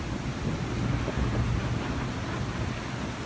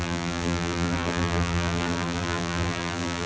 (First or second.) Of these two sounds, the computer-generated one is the second